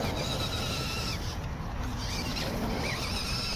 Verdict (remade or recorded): recorded